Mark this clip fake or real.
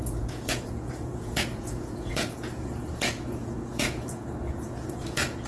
fake